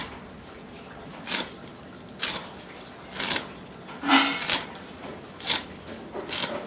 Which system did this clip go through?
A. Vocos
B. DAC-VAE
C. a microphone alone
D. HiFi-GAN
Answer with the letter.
C